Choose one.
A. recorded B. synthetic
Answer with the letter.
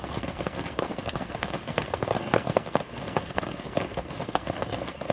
B